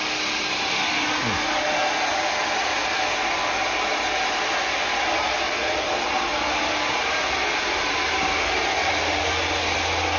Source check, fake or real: real